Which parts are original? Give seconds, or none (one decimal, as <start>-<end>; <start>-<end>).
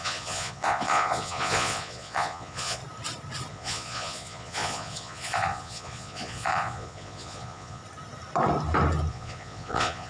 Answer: 2.8-3.5; 7.8-9.1